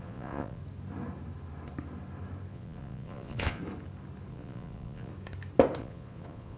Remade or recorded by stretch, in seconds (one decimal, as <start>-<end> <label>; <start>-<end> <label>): 0.0-0.6 remade; 0.6-2.5 recorded; 2.5-3.6 remade; 3.6-4.3 recorded; 4.3-5.1 remade; 5.1-5.8 recorded; 5.8-6.6 remade